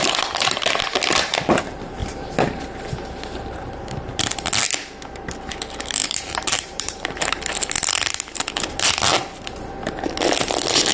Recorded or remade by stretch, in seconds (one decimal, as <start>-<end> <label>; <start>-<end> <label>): 0.0-6.0 recorded; 6.0-7.4 remade; 7.4-10.9 recorded